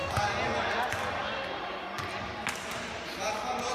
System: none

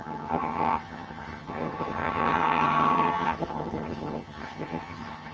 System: vocoder, HiFi-GAN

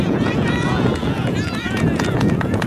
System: vocoder, Vocos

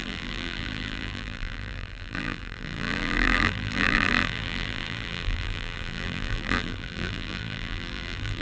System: vocoder, BigVGAN v2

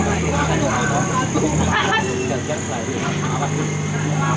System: none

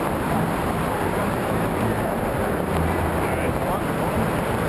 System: vocoder, BigVGAN v2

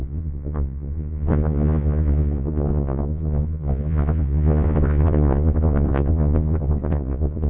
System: vocoder, Vocos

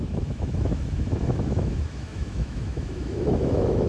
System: autoencoder, DAC-VAE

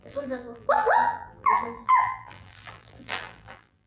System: vocoder, BigVGAN v2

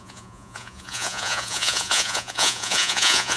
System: vocoder, Vocos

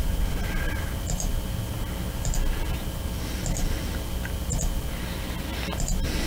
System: none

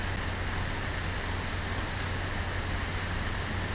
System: none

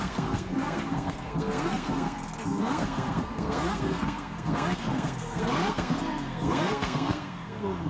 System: codec, SNAC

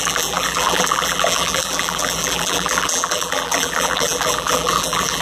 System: vocoder, BigVGAN v2